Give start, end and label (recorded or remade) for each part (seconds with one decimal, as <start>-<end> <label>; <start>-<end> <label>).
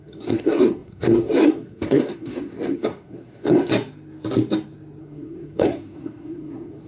0.0-3.7 remade; 3.7-5.0 recorded; 5.0-6.9 remade